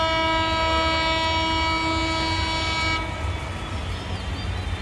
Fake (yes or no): no